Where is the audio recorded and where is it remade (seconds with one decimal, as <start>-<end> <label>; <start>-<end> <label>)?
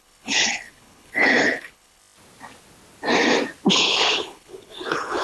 0.0-2.0 remade; 2.0-3.7 recorded; 3.7-5.2 remade